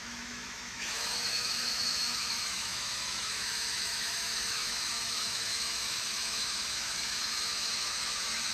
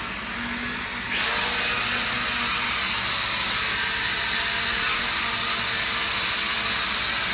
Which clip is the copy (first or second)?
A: first